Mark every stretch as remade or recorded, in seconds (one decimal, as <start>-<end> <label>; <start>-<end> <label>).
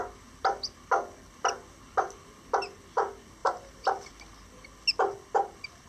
0.0-3.4 recorded; 3.4-4.1 remade; 4.1-5.9 recorded